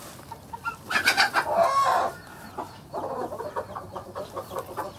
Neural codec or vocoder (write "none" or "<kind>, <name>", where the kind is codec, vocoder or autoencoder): none